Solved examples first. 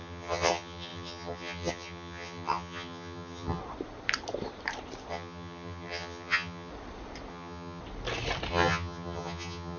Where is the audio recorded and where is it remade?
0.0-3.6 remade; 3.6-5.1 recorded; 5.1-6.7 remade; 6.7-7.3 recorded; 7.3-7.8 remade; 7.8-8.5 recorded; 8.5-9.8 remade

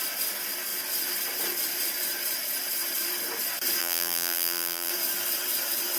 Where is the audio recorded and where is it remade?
0.0-3.8 recorded; 3.8-4.9 remade; 4.9-6.0 recorded